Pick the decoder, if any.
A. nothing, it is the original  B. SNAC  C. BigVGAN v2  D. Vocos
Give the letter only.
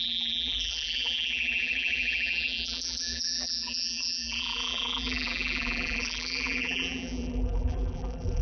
C